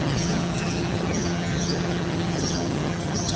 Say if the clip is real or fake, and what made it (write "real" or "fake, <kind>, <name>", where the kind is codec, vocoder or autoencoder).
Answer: fake, vocoder, HiFi-GAN